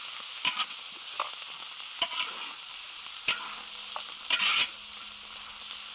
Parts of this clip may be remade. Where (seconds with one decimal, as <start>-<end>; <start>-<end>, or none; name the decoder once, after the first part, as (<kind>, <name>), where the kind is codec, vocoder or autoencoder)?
none